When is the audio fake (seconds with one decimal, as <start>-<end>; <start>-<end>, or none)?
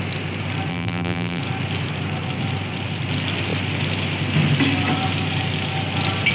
0.7-1.4